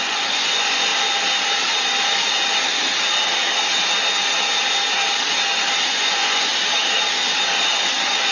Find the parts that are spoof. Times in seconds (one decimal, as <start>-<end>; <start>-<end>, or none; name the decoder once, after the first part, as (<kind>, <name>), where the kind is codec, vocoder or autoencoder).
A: 0.0-0.9 (vocoder, Vocos); 5.9-6.5